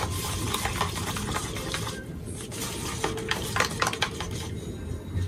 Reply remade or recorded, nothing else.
recorded